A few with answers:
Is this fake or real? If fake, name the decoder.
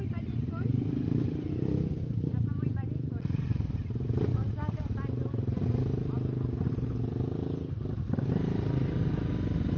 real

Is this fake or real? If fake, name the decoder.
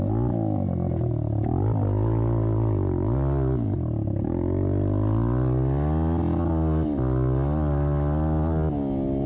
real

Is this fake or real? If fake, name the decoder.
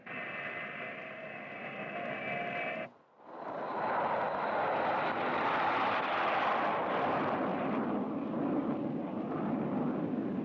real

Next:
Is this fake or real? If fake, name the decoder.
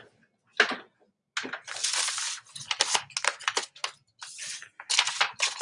real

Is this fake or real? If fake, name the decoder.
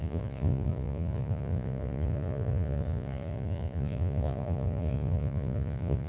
fake, vocoder, Vocos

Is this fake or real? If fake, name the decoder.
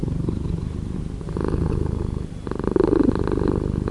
real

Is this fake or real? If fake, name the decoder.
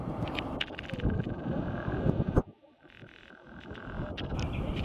real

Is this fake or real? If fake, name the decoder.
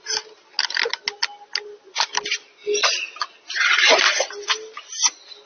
real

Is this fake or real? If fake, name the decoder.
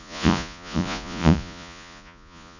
fake, vocoder, Vocos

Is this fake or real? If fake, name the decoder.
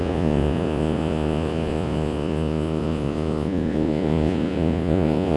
fake, vocoder, Vocos